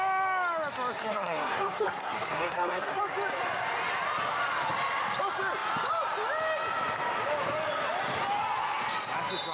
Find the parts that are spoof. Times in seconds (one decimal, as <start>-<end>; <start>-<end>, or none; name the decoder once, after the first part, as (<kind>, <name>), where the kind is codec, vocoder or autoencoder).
1.0-3.0 (codec, SNAC)